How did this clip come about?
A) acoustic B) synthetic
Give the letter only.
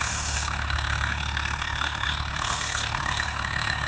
B